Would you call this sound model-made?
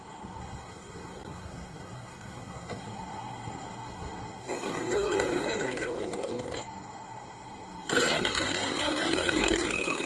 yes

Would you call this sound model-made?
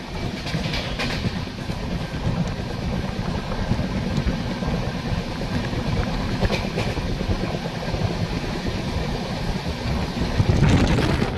no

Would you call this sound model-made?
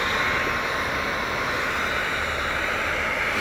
no